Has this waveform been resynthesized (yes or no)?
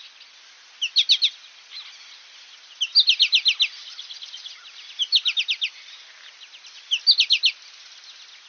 no